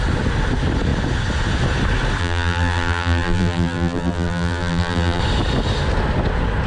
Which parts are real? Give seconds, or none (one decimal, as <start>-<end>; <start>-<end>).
0.0-2.2; 5.2-6.7